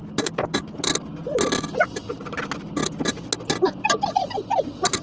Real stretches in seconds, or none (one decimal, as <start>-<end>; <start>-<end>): 0.0-5.0